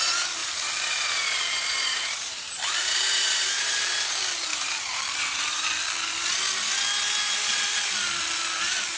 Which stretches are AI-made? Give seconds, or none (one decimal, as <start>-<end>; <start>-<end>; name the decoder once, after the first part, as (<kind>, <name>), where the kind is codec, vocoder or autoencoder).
0.4-3.7 (vocoder, BigVGAN v2); 4.5-5.7